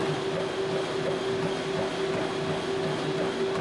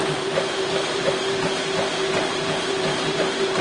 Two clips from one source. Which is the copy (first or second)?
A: second